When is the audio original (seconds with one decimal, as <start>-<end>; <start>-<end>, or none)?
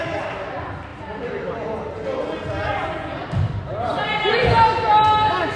0.0-5.6